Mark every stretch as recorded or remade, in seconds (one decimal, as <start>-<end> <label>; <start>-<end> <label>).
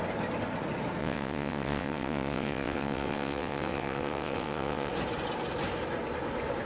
0.0-1.0 recorded; 1.0-4.9 remade; 4.9-6.7 recorded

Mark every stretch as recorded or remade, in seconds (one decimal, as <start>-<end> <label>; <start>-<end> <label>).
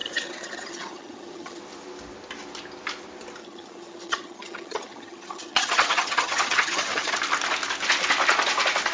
0.0-1.6 remade; 1.6-3.4 recorded; 3.4-7.1 remade; 7.1-8.9 recorded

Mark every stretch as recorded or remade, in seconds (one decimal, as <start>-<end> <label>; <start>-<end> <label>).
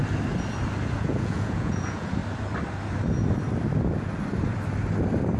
0.0-1.0 recorded; 1.0-2.2 remade; 2.2-5.4 recorded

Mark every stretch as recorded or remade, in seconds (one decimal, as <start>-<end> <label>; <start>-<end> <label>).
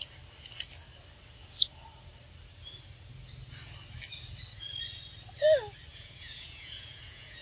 0.0-5.9 recorded; 5.9-7.4 remade